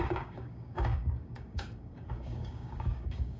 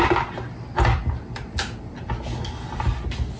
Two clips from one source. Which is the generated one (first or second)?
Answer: first